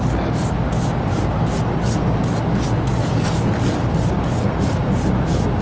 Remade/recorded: recorded